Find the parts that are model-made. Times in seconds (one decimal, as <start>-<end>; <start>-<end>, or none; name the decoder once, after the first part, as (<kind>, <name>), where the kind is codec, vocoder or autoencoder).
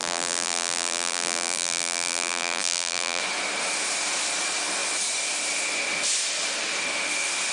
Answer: 0.0-3.2 (vocoder, BigVGAN v2)